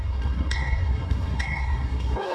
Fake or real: fake